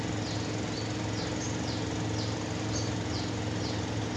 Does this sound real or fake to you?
real